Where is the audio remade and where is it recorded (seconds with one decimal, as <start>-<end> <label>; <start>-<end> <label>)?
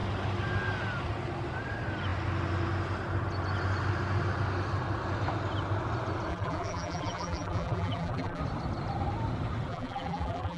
0.0-6.3 recorded; 6.3-8.4 remade; 8.4-9.7 recorded; 9.7-10.6 remade